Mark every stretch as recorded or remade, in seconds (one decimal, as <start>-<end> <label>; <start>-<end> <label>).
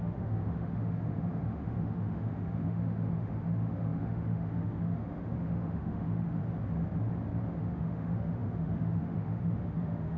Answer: 0.0-6.4 remade; 6.4-7.6 recorded; 7.6-10.2 remade